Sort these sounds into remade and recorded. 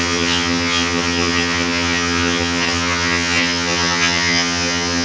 remade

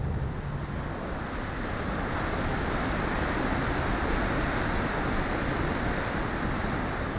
recorded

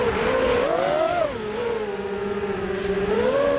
recorded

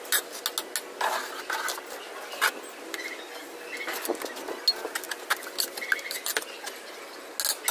recorded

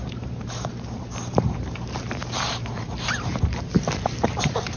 remade